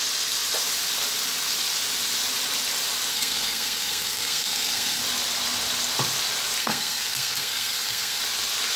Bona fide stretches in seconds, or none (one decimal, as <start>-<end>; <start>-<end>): 0.0-3.1; 5.0-6.6; 8.2-8.8